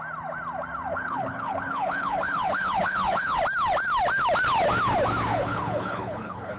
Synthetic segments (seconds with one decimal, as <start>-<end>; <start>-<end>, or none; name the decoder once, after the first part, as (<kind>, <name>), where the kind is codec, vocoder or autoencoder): 0.9-3.4 (codec, HILCodec); 5.3-6.6